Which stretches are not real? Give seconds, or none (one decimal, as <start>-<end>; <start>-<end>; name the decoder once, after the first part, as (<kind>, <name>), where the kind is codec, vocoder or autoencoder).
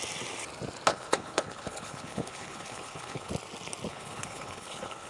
0.9-3.3 (codec, HILCodec); 3.9-5.1